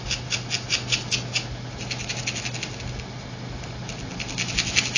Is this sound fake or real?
real